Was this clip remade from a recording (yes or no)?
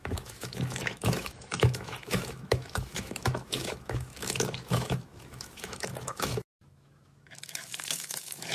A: yes